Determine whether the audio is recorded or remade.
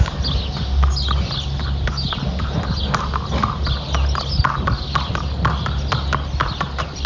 recorded